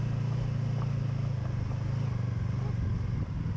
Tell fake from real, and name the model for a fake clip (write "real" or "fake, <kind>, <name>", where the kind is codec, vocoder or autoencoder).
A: real